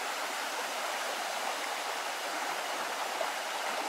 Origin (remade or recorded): recorded